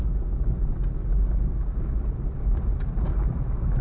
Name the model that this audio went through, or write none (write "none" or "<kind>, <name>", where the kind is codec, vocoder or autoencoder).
none